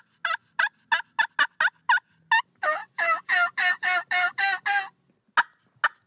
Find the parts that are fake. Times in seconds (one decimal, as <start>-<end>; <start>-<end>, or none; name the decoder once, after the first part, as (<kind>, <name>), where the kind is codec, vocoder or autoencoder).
none